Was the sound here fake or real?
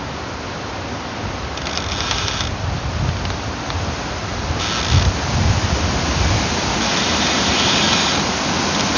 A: real